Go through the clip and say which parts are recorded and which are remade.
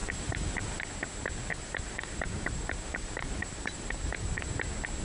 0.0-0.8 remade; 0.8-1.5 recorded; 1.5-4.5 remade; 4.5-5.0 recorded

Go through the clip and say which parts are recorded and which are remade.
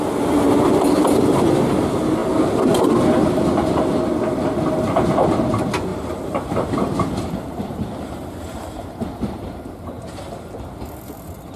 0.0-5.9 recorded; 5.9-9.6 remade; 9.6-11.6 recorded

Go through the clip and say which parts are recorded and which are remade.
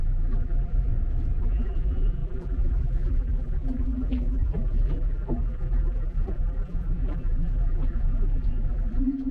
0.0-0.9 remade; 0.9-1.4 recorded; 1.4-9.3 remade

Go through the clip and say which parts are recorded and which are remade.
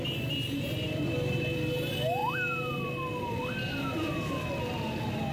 0.0-5.3 recorded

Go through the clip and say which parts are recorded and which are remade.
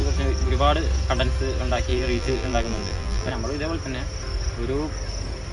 0.0-1.9 recorded; 1.9-3.3 remade; 3.3-5.5 recorded